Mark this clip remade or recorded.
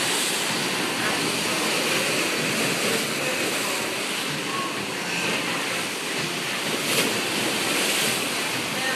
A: recorded